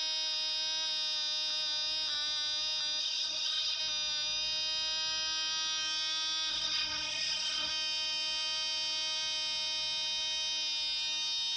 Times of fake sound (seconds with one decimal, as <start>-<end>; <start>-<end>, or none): 3.0-3.8; 6.5-7.7